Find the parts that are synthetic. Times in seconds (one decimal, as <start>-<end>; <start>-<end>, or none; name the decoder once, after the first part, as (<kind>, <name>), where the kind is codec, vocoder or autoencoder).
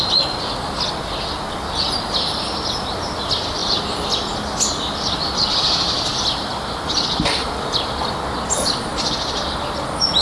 none